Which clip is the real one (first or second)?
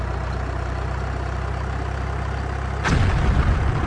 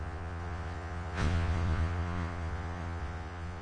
first